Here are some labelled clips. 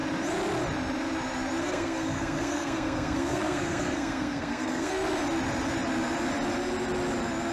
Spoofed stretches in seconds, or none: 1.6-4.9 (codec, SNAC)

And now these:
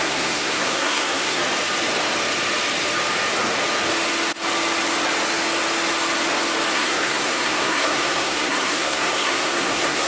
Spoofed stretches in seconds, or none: 0.0-1.4 (codec, SNAC); 6.7-10.1

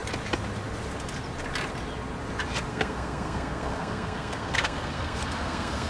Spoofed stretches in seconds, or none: 2.7-5.9 (codec, SNAC)

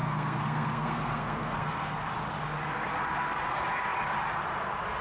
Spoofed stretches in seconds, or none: 0.0-2.0 (codec, SNAC)